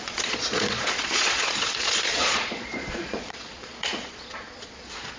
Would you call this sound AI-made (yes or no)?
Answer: yes